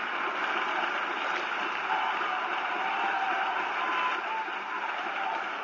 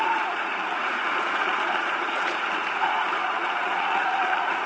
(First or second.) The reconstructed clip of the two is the second